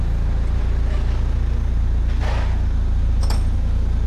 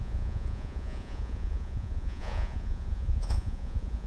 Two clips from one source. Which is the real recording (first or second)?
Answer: first